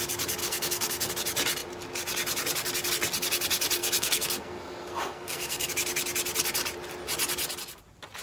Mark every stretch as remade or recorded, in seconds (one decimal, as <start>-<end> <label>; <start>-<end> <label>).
0.0-0.4 recorded; 0.4-1.1 remade; 1.1-3.8 recorded; 3.8-5.7 remade; 5.7-8.2 recorded